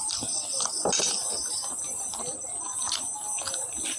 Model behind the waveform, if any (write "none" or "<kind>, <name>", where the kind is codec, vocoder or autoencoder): none